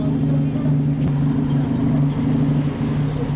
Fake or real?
real